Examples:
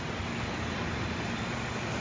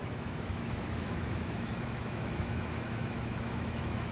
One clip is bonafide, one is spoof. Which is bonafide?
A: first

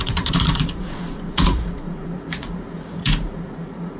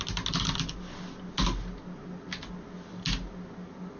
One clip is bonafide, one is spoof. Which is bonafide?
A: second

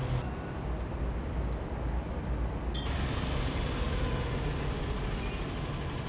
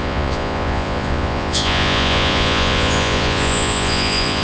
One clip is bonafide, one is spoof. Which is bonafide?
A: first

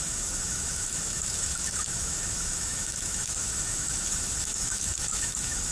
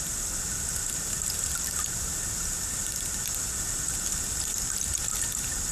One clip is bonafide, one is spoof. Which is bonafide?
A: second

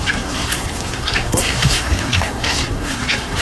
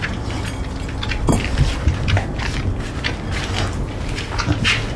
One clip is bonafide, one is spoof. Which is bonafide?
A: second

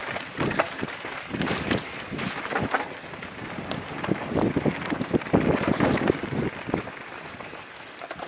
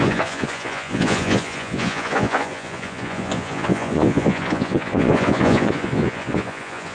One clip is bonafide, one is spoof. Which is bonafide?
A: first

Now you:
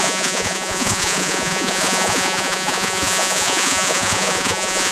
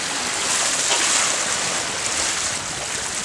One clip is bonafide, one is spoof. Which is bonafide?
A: second